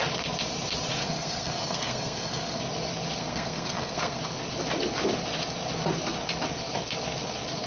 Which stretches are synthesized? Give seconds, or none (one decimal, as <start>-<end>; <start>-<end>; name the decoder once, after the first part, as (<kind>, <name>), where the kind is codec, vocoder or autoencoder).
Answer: 1.0-2.6 (codec, SNAC); 3.2-4.2